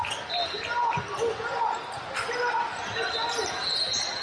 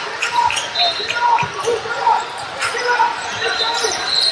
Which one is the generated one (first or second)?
second